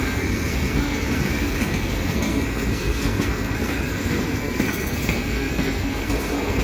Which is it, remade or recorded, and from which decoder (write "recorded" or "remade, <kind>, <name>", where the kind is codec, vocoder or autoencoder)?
remade, codec, SNAC